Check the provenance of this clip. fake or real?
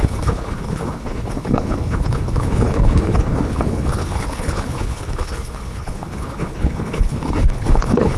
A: fake